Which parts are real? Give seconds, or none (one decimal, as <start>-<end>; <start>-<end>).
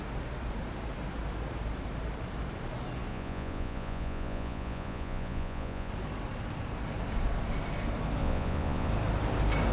0.0-3.1; 5.9-8.2; 8.9-9.7